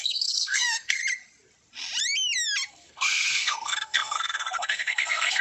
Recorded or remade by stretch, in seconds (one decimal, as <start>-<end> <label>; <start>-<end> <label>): 0.0-1.0 remade; 1.0-2.7 recorded; 2.7-5.4 remade